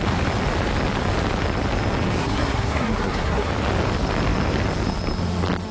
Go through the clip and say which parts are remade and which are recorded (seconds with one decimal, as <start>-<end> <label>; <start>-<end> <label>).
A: 0.0-2.2 recorded; 2.2-3.5 remade; 3.5-5.7 recorded